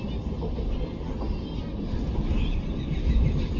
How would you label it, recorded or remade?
recorded